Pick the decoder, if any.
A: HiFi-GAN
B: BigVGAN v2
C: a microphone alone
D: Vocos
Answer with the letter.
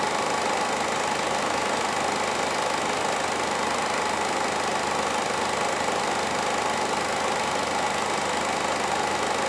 C